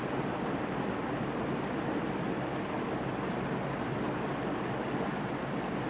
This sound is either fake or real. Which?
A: real